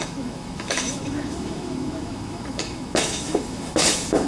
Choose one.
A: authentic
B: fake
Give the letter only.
B